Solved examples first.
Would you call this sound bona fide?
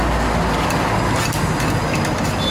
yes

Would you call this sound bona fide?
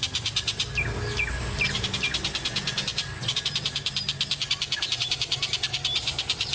yes